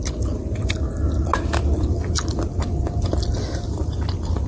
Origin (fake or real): real